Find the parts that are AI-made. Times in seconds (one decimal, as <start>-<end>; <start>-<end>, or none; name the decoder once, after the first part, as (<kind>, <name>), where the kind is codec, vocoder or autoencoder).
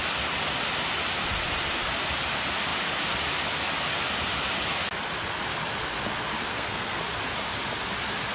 6.5-7.0 (codec, SNAC)